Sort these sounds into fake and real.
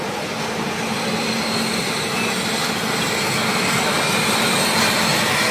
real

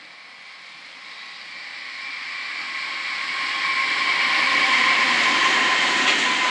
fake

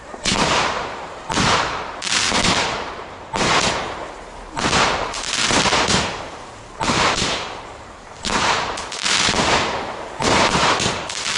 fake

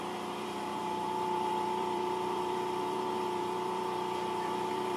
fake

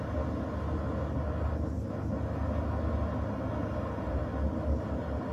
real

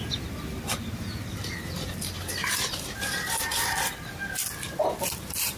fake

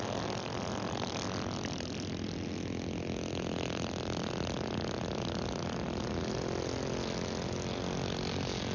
real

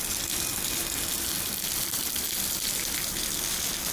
real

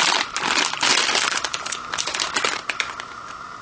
real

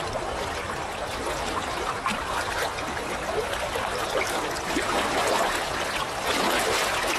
real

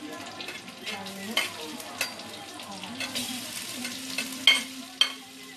real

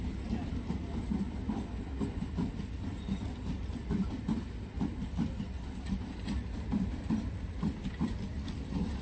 real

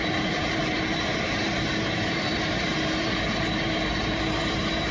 fake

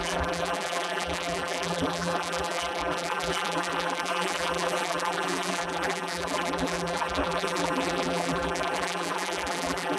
fake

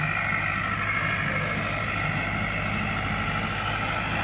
real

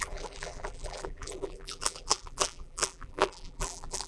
fake